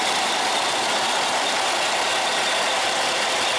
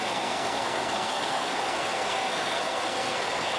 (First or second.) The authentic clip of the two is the first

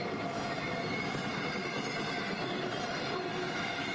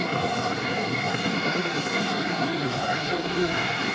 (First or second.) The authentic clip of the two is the first